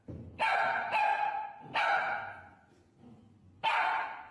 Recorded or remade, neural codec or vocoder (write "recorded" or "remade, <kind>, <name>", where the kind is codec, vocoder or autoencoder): recorded